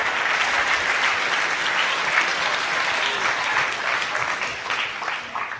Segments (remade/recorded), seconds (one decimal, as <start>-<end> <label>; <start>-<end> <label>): 0.0-1.0 remade; 1.0-1.6 recorded; 1.6-3.3 remade; 3.3-5.6 recorded